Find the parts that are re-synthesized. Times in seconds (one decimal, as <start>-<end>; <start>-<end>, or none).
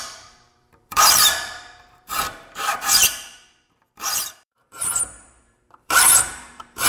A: 0.0-6.9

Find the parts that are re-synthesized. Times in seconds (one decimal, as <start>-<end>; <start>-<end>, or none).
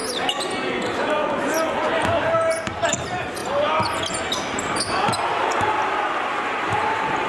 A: 2.3-3.4; 4.5-7.3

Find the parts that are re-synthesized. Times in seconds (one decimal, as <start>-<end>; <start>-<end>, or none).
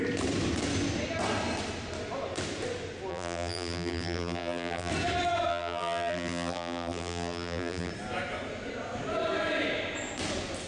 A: 3.1-4.9; 5.5-7.9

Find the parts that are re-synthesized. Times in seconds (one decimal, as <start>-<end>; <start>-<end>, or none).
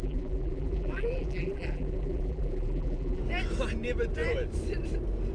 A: 0.0-3.2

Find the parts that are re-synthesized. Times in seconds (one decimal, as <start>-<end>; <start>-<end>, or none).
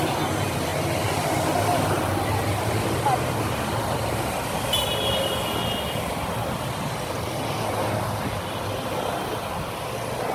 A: none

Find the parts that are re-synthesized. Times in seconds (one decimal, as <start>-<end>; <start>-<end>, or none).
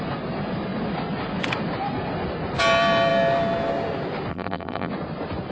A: 4.3-4.9